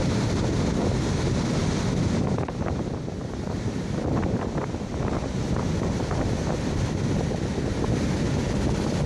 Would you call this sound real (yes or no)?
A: yes